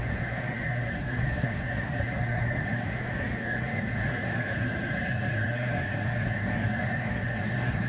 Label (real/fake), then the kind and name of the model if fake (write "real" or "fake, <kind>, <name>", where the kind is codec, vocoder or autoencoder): fake, codec, SNAC